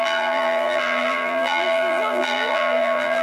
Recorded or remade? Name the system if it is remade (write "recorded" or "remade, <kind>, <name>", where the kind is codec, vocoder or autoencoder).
remade, vocoder, BigVGAN v2